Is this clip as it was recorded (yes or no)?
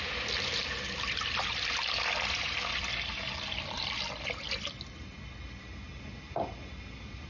yes